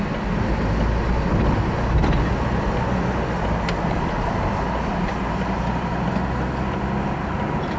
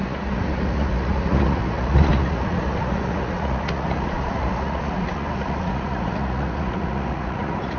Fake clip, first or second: second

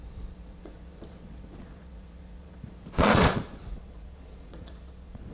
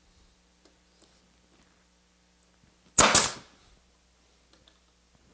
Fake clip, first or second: first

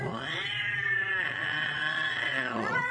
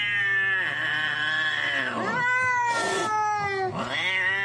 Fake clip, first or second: first